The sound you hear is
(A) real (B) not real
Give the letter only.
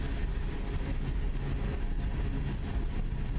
A